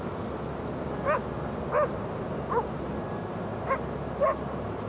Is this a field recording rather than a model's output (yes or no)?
yes